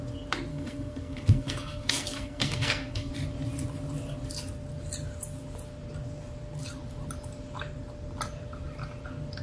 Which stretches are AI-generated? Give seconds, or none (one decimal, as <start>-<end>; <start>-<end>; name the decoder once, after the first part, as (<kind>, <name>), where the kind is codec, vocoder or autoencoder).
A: 0.5-3.1 (codec, SNAC)